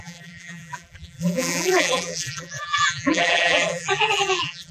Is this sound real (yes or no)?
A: no